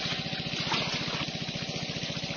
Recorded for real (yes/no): yes